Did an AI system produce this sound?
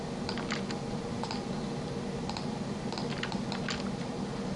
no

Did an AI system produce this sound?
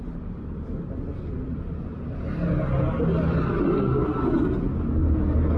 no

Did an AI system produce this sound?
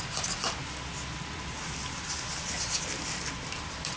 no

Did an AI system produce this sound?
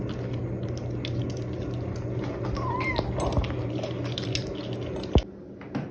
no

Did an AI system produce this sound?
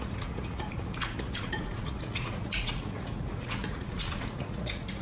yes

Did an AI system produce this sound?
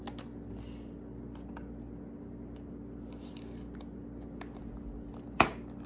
no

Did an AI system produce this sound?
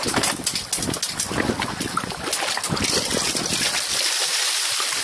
no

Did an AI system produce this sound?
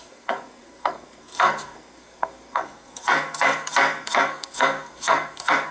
yes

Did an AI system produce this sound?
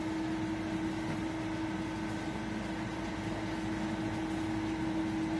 no